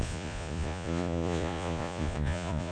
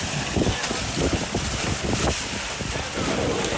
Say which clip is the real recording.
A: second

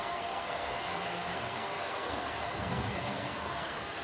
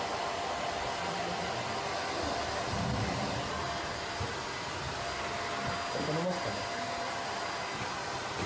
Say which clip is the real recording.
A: second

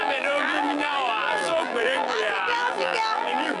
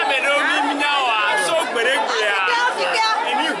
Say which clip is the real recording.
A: second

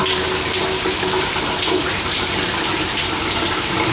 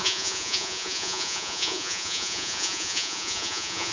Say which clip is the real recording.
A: first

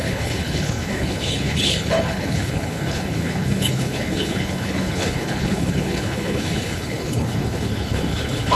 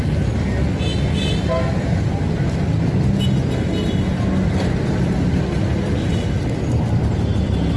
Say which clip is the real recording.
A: second